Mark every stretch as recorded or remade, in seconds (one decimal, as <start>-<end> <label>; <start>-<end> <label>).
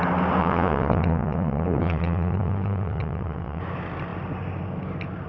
0.0-0.4 recorded; 0.4-3.6 remade; 3.6-5.3 recorded